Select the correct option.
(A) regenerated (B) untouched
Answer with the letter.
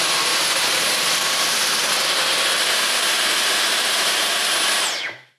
A